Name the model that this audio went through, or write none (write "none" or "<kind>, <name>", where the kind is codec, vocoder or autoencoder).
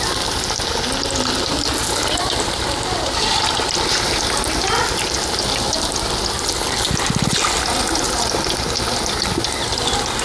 none